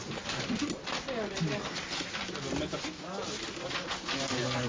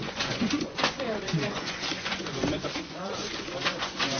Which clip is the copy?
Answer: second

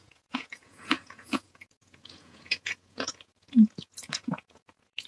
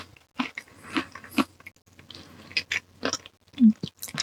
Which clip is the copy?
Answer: first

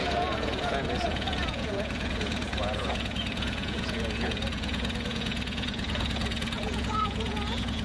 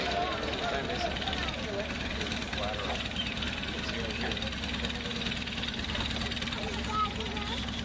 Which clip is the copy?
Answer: first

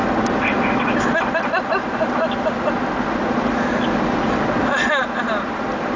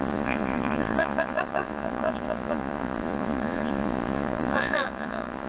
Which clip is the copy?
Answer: second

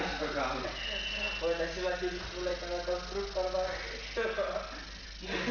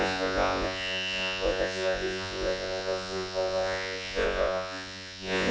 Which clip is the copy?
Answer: second